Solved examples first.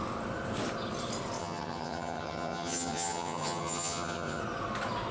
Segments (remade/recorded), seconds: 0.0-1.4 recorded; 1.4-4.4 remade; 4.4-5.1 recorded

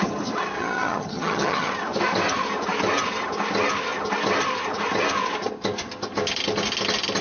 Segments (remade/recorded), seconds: 0.0-0.6 recorded; 0.6-1.7 remade; 1.7-7.2 recorded